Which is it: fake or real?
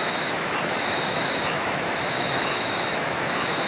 fake